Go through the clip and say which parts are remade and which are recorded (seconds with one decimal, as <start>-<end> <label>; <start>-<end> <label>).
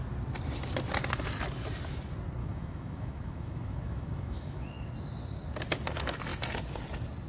0.0-2.4 recorded; 2.4-4.9 remade; 4.9-7.3 recorded